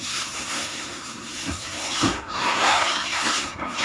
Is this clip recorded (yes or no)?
no